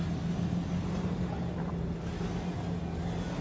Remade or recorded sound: recorded